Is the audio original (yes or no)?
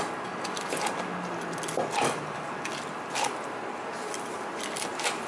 yes